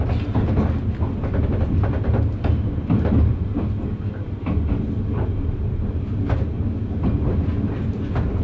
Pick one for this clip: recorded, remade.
recorded